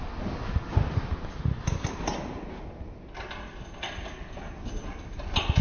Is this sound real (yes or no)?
yes